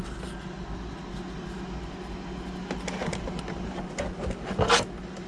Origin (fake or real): real